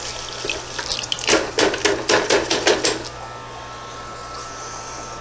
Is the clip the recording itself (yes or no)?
yes